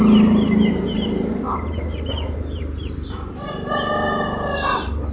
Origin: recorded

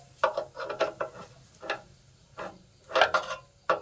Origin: recorded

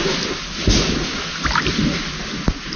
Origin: recorded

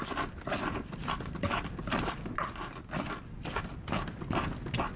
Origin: recorded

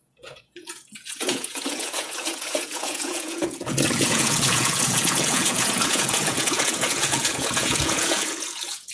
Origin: remade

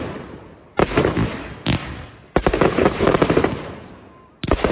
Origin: recorded